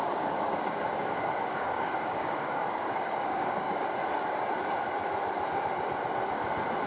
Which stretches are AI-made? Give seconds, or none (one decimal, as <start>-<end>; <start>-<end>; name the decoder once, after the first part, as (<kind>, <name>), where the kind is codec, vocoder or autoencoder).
0.0-3.8 (codec, DAC)

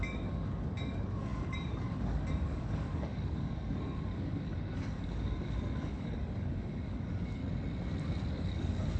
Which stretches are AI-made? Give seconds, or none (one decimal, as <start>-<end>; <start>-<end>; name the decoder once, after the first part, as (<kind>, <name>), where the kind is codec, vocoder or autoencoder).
0.0-7.4 (codec, DAC); 8.3-9.0

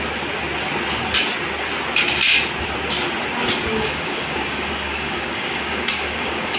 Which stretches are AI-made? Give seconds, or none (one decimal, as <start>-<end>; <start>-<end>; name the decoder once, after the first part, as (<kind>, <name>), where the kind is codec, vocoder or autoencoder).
3.7-6.6 (codec, DAC)

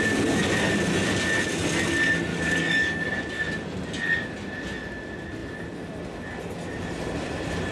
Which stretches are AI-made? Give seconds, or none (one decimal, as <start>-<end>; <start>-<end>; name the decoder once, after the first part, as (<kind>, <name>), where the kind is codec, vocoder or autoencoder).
2.3-3.2 (codec, DAC)

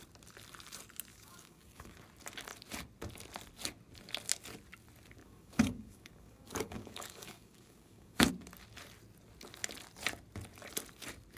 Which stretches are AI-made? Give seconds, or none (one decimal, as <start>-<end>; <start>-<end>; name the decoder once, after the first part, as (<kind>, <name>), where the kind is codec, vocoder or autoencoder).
1.1-2.0 (codec, DAC); 5.2-8.3